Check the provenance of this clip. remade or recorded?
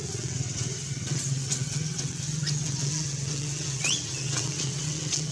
remade